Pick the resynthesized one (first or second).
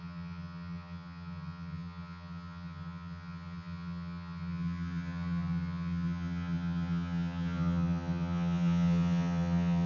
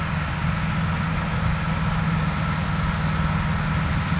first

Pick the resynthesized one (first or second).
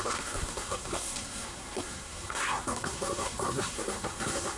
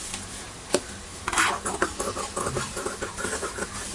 first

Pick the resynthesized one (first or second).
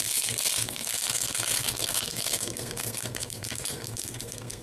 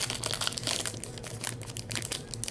first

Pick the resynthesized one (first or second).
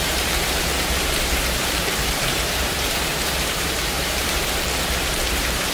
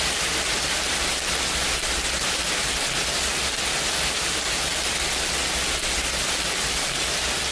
first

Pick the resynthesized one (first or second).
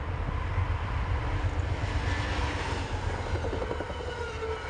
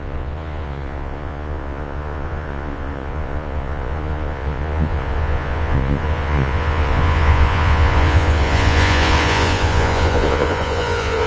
second